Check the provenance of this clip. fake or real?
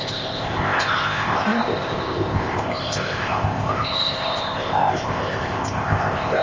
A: fake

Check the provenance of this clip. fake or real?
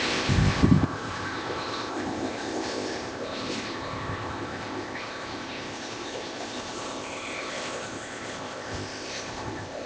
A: fake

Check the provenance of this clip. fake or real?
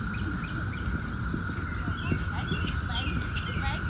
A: real